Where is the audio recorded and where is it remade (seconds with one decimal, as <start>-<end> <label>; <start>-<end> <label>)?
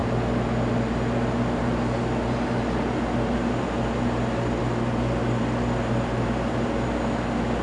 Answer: 0.0-7.6 recorded